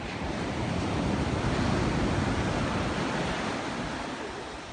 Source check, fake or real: real